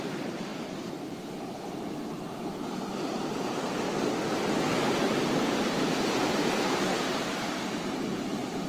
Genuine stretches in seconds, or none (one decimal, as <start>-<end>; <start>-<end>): 0.5-5.5